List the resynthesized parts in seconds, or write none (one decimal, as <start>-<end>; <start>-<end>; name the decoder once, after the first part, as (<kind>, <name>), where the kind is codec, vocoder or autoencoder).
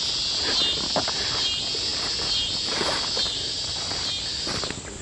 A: none